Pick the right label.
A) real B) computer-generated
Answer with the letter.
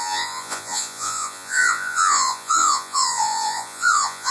B